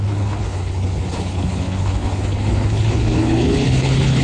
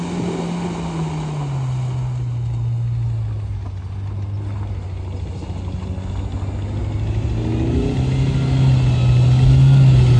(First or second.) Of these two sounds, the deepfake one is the first